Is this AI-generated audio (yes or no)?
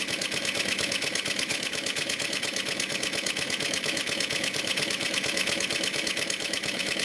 yes